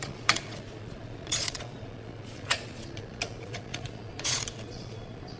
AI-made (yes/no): yes